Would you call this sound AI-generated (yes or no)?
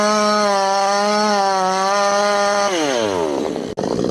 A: no